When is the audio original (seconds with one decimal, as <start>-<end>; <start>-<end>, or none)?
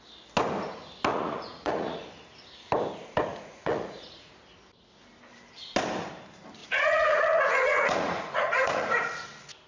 0.0-1.1; 2.0-3.3; 4.3-6.6; 8.9-9.7